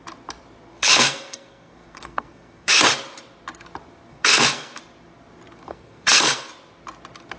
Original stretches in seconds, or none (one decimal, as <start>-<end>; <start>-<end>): 0.0-0.7; 2.8-4.1; 4.8-5.7; 6.5-7.4